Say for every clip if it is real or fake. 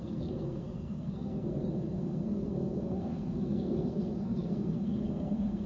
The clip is fake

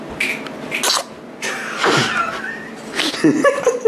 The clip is real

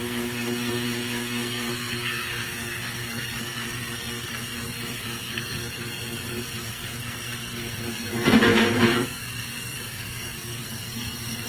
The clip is fake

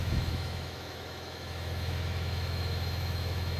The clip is fake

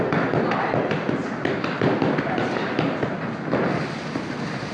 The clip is real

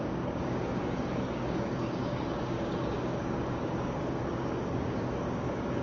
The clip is fake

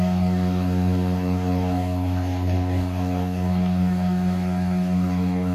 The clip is fake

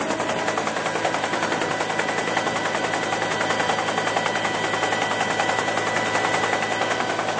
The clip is real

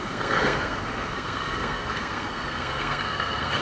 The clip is fake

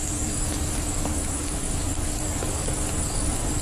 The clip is fake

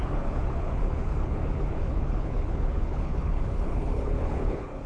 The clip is fake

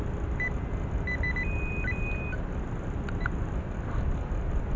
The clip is real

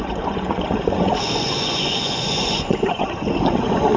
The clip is fake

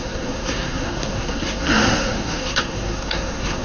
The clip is fake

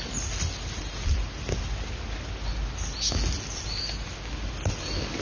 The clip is real